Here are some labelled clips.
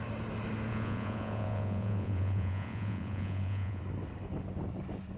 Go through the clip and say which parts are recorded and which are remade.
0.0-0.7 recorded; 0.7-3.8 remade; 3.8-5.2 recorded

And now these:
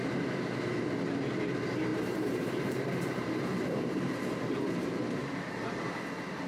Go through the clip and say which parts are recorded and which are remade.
0.0-1.9 recorded; 1.9-5.8 remade; 5.8-6.5 recorded

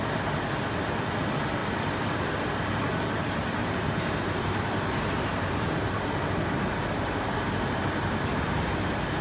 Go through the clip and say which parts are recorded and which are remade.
0.0-3.6 recorded; 3.6-7.8 remade; 7.8-8.3 recorded; 8.3-9.2 remade

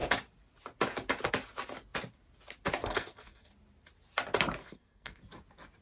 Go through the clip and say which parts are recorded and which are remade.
0.0-2.8 recorded; 2.8-3.5 remade; 3.5-4.6 recorded; 4.6-5.2 remade; 5.2-5.8 recorded